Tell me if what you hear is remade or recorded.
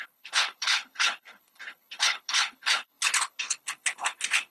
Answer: remade